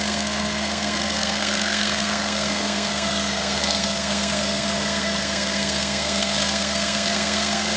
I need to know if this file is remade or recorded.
remade